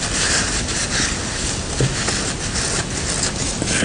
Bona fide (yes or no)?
yes